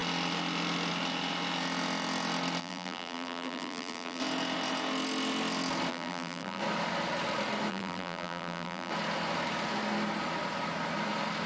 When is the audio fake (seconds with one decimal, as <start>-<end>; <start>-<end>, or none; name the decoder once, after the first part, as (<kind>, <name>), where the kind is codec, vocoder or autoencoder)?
2.6-4.2 (vocoder, BigVGAN v2); 5.9-6.6; 7.7-8.9